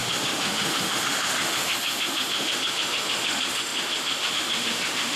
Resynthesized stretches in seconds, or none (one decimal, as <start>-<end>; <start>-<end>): 0.0-5.2